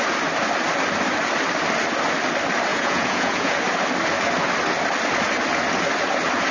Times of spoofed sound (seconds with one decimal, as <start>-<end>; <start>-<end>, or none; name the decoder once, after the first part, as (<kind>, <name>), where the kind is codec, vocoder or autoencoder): 2.7-3.5 (vocoder, Vocos)

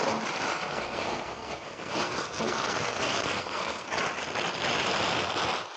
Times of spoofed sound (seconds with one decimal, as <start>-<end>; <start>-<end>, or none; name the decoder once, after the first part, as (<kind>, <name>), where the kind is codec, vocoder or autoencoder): 0.5-4.0 (codec, SNAC)